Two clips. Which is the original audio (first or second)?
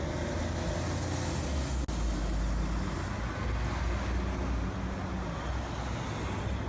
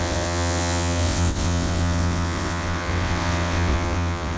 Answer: first